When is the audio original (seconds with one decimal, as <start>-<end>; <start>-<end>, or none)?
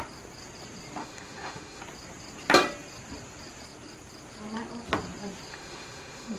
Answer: 0.0-1.0; 1.8-5.5